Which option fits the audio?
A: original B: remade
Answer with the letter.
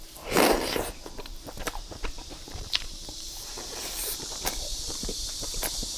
B